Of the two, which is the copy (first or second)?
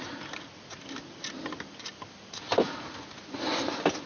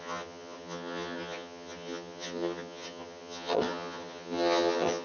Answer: second